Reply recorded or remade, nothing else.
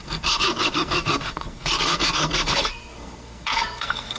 remade